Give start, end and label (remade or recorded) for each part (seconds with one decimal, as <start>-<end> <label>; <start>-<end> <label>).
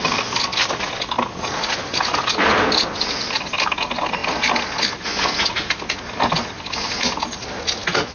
0.0-8.1 recorded